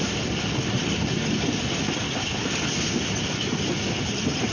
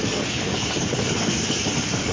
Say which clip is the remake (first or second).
second